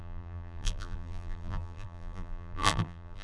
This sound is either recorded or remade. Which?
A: remade